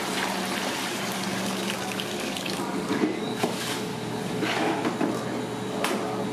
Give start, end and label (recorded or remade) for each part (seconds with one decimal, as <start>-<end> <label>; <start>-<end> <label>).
0.0-0.9 recorded; 0.9-4.7 remade; 4.7-6.3 recorded